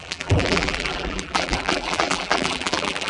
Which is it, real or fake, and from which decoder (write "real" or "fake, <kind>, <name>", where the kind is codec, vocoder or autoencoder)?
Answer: fake, vocoder, BigVGAN v2